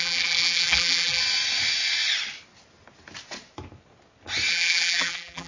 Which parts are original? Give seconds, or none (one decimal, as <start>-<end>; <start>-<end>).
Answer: 1.2-4.5